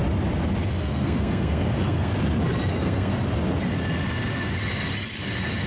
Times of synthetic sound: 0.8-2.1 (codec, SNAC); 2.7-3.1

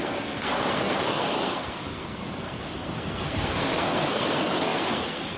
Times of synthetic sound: 0.0-5.4 (codec, SNAC)

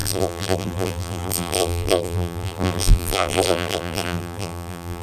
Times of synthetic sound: 0.0-5.0 (vocoder, BigVGAN v2)

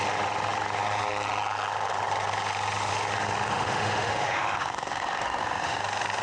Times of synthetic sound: 3.5-5.8 (autoencoder, DAC-VAE)

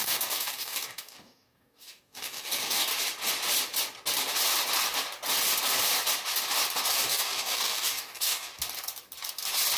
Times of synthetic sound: 0.0-2.9 (codec, DAC); 6.9-8.5

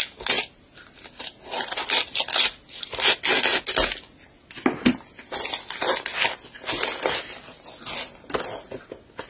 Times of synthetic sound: none